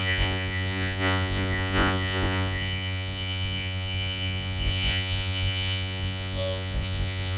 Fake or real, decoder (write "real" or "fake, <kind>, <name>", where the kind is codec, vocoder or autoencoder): fake, vocoder, Vocos